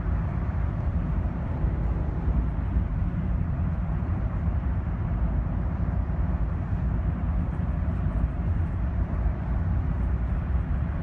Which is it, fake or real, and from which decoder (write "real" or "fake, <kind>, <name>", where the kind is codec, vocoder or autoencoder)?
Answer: fake, vocoder, BigVGAN v2